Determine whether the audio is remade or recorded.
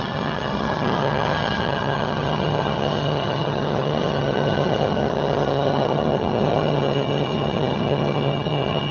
remade